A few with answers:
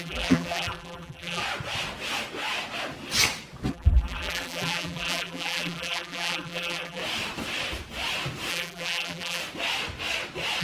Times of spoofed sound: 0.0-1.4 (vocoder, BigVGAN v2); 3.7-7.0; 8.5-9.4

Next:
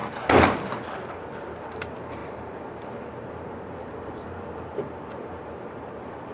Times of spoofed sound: 1.1-6.3 (vocoder, BigVGAN v2)

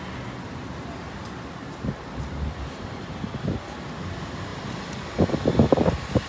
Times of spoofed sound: 1.6-3.1 (vocoder, BigVGAN v2)

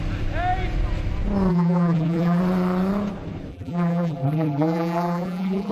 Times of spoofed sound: 1.5-2.4 (vocoder, BigVGAN v2); 3.5-5.7